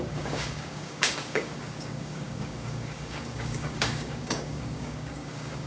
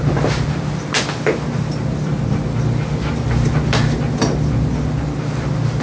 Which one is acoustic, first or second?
second